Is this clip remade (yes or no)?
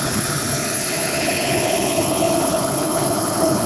yes